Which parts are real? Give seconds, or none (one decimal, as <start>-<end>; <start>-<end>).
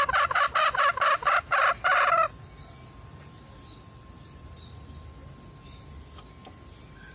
0.0-0.6; 1.6-7.1